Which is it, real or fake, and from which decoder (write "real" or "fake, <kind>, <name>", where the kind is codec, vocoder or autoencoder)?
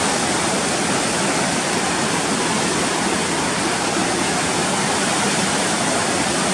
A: real